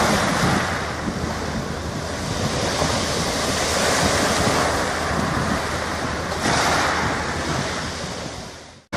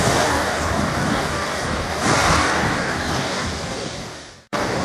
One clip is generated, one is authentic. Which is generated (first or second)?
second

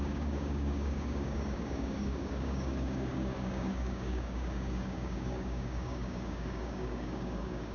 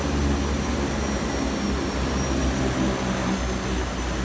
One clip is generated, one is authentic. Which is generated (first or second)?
first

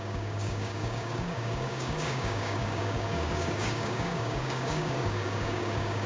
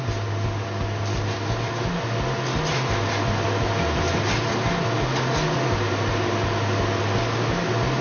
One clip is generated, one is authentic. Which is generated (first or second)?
first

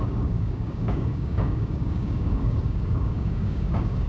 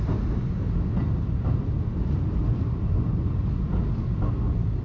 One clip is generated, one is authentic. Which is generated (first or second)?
first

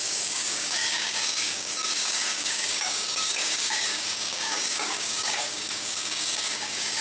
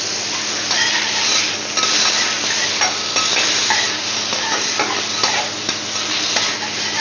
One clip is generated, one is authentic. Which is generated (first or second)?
first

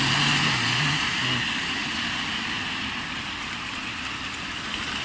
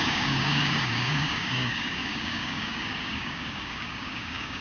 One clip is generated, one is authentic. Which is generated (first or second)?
second